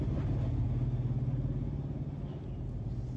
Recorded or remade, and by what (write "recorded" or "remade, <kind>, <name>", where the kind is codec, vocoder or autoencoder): recorded